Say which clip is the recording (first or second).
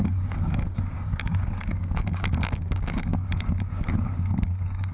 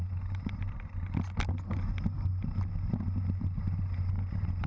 second